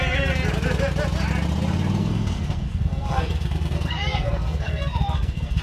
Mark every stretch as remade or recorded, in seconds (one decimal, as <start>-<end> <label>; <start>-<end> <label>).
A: 0.0-2.0 recorded; 2.0-5.6 remade